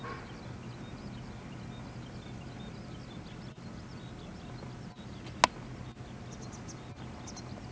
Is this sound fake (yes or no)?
no